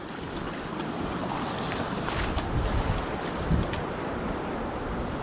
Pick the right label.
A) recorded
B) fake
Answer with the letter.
A